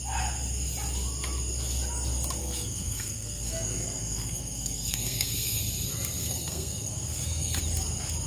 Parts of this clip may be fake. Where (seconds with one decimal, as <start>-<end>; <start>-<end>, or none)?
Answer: 2.4-5.6; 6.2-7.6